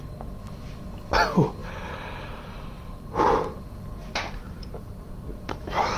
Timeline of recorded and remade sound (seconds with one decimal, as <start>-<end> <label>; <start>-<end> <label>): 0.0-1.6 recorded; 1.6-3.1 remade; 3.1-4.0 recorded; 4.0-5.6 remade; 5.6-6.0 recorded

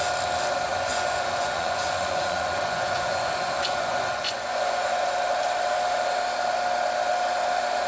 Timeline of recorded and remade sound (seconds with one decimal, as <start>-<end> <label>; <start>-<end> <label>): 0.0-0.7 recorded; 0.7-5.1 remade; 5.1-7.9 recorded

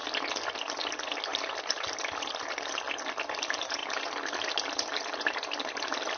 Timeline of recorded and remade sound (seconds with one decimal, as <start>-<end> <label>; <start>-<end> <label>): 0.0-6.2 recorded

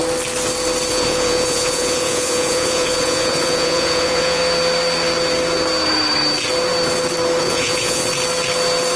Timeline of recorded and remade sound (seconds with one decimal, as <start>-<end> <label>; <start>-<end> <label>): 0.0-0.9 recorded; 0.9-4.4 remade; 4.4-7.4 recorded; 7.4-8.0 remade; 8.0-9.0 recorded

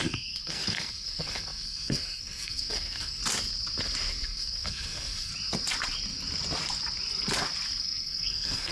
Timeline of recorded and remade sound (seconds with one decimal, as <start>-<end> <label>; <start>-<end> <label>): 0.0-3.2 remade; 3.2-4.1 recorded; 4.1-5.3 remade; 5.3-7.8 recorded; 7.8-8.7 remade

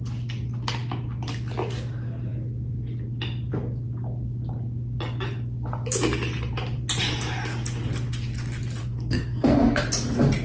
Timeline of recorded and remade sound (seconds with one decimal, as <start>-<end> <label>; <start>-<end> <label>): 0.0-8.8 recorded; 8.8-9.8 remade; 9.8-10.4 recorded

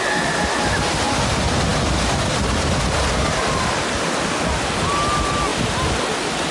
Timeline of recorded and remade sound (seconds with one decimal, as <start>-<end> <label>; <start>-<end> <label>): 0.0-6.5 recorded